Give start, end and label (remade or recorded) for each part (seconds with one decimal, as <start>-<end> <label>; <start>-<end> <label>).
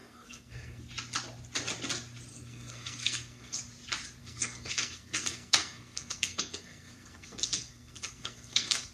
0.0-0.8 remade; 0.8-2.3 recorded; 2.3-3.6 remade; 3.6-4.2 recorded; 4.2-8.9 remade